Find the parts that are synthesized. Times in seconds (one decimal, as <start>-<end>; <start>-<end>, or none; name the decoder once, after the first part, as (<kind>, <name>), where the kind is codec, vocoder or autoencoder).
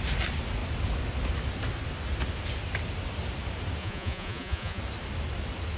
3.8-4.8 (vocoder, Vocos)